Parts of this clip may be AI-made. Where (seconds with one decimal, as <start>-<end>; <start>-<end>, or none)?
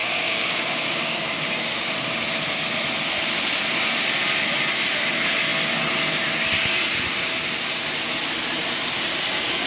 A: 0.0-1.9